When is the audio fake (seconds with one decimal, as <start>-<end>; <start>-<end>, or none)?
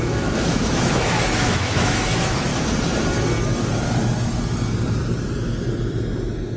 0.0-2.5